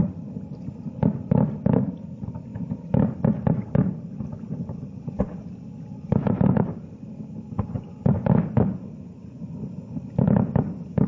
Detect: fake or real real